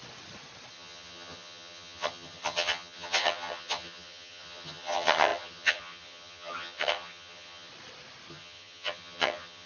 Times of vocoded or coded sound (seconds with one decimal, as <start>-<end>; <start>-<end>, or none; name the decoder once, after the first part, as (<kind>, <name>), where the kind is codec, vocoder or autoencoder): 0.7-7.7 (vocoder, HiFi-GAN); 8.3-9.7